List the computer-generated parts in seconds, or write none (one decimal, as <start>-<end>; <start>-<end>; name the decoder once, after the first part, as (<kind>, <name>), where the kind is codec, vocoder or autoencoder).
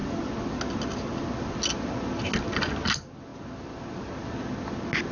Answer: none